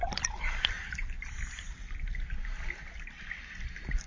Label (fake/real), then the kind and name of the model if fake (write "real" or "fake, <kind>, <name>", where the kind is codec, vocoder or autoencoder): real